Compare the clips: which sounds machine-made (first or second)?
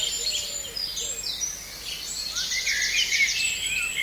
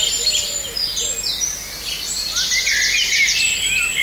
first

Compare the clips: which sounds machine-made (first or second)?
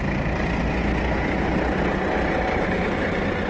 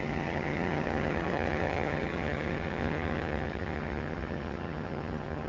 second